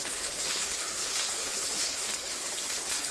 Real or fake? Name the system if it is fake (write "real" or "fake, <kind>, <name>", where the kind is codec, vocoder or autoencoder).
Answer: fake, codec, HILCodec